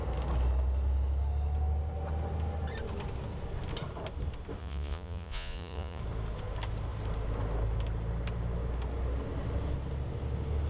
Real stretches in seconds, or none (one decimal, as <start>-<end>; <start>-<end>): 0.0-4.6; 6.0-10.7